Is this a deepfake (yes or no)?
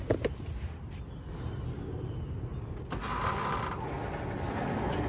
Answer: no